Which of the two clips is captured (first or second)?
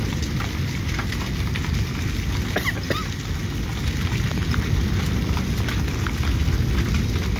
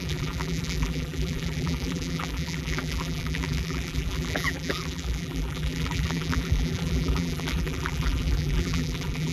first